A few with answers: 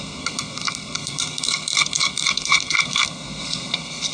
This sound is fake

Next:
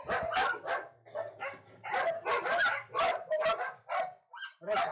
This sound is real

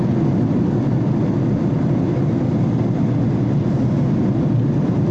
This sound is real